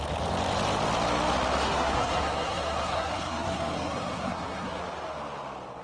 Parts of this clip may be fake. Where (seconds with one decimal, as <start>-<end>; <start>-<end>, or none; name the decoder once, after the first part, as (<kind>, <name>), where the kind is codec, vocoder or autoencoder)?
1.6-4.8 (codec, SNAC)